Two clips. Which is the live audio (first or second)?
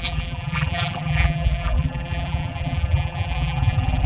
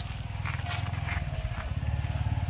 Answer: second